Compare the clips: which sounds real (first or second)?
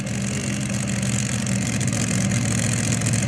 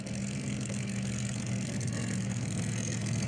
first